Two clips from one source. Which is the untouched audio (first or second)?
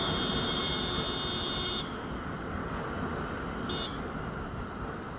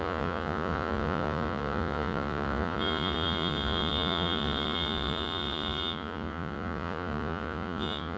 first